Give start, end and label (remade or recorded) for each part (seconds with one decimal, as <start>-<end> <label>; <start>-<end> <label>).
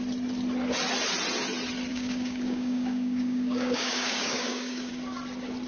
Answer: 0.0-1.9 recorded; 1.9-4.9 remade; 4.9-5.7 recorded